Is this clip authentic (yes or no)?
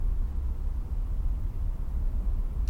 yes